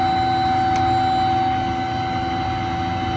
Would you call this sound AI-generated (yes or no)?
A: no